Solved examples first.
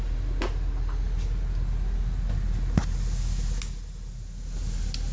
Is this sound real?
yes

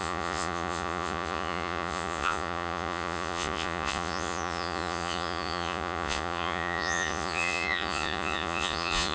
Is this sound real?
no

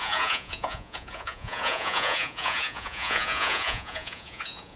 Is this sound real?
no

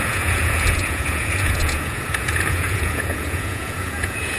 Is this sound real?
no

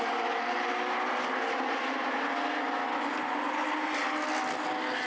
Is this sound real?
yes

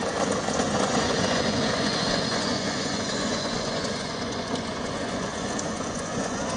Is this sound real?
no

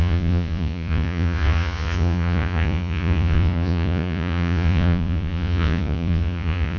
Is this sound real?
no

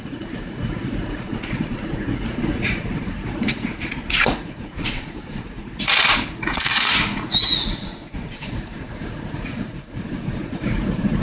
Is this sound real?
no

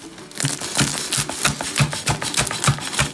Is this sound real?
yes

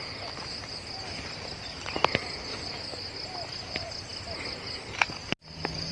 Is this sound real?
yes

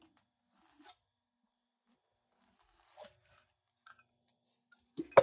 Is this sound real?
yes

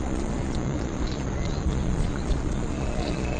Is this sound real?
no